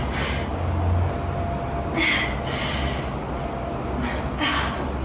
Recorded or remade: recorded